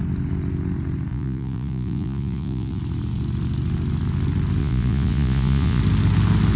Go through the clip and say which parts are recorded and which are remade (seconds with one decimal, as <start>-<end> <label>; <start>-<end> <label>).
0.0-1.1 recorded; 1.1-2.8 remade; 2.8-4.6 recorded; 4.6-5.8 remade; 5.8-6.6 recorded